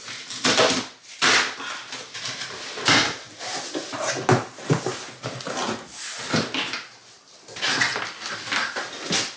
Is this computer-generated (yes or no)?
no